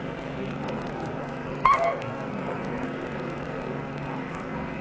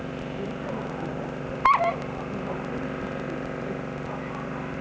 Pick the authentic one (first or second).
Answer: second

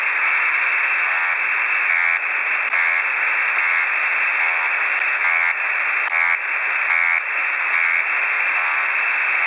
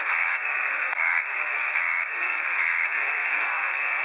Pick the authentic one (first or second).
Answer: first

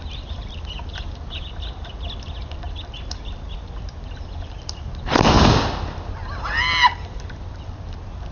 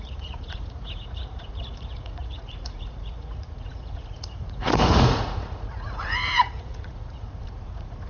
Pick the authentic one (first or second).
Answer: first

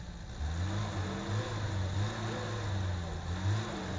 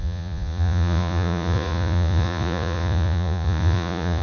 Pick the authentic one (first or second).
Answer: first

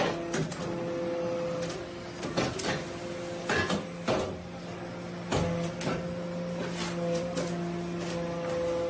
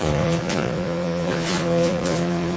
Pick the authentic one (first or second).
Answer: first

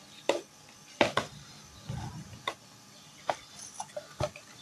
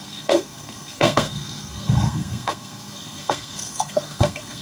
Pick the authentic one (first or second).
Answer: first